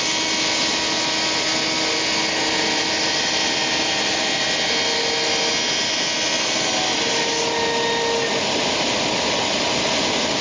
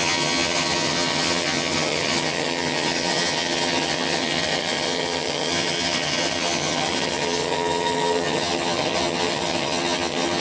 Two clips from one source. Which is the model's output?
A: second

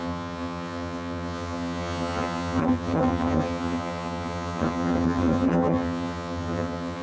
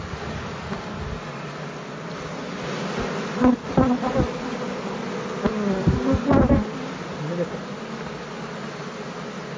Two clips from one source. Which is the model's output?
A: first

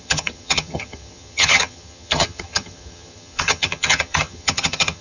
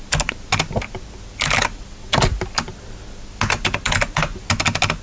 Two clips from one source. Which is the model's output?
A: first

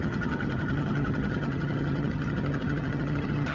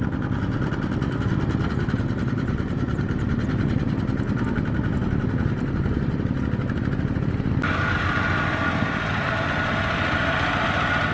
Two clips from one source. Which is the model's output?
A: first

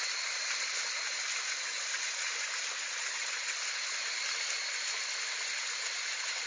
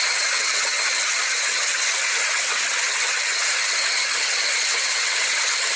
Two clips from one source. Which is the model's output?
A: second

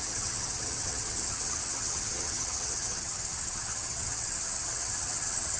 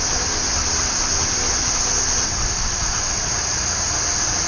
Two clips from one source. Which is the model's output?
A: first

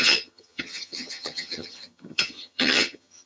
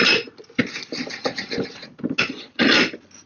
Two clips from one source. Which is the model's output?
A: first